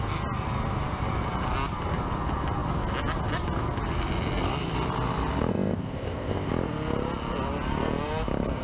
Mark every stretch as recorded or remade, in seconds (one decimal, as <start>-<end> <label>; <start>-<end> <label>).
0.0-5.5 recorded; 5.5-6.5 remade; 6.5-8.6 recorded